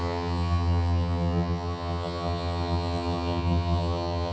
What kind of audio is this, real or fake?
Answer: fake